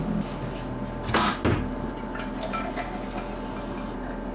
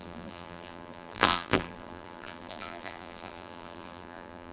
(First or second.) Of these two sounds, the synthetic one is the second